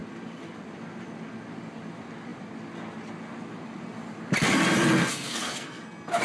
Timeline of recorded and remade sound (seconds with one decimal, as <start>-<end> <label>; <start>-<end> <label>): 0.0-5.1 recorded; 5.1-5.8 remade; 5.8-6.2 recorded